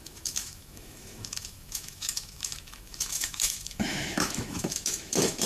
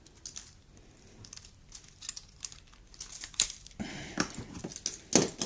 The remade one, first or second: first